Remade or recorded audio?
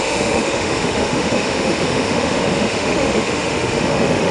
remade